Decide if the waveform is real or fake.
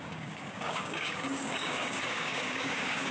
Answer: fake